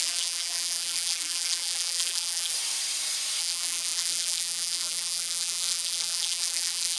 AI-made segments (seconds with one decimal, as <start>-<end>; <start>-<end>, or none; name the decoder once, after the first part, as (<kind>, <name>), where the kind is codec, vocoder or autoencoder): 0.0-2.5 (vocoder, BigVGAN v2); 3.4-7.0